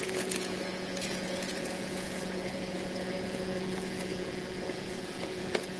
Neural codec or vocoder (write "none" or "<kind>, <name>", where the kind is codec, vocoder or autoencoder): vocoder, Vocos